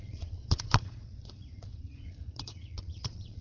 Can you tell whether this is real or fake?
fake